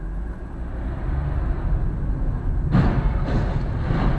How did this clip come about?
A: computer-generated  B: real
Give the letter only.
B